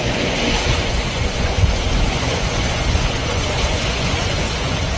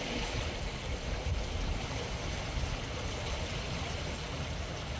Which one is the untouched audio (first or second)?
second